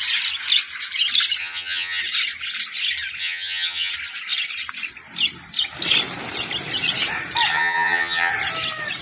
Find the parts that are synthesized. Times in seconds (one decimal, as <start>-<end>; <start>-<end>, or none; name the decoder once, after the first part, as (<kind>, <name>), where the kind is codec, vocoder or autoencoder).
1.4-2.0 (vocoder, HiFi-GAN); 3.2-3.9; 7.5-8.3